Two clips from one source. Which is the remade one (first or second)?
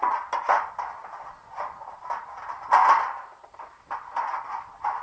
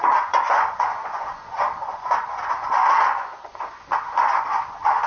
second